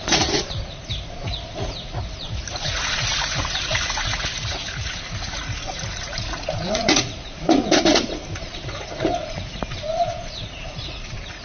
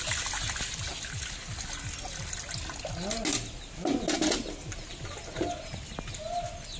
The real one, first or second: second